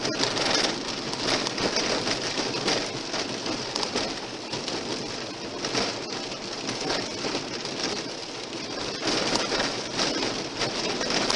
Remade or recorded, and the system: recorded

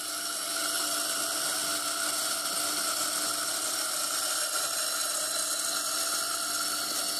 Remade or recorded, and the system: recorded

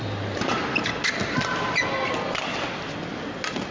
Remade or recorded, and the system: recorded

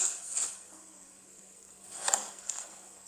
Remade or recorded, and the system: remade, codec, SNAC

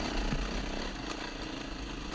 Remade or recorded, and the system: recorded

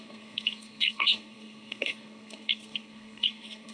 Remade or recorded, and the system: remade, codec, SNAC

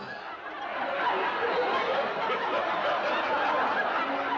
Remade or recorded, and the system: recorded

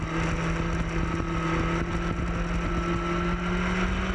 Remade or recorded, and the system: recorded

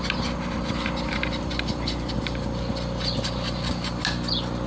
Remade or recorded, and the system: recorded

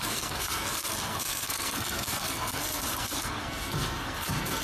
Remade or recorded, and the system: remade, codec, SNAC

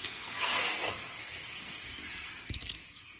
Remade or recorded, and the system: remade, codec, SNAC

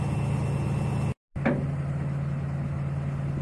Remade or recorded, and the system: recorded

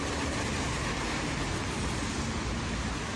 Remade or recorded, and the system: recorded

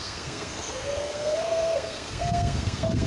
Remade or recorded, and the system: remade, codec, SNAC